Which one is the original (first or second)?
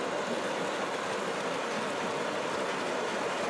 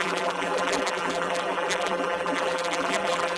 first